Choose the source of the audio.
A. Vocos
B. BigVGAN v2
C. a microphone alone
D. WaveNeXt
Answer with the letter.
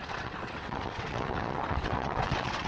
D